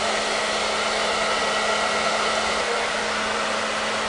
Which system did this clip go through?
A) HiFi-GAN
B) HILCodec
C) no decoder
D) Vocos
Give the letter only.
C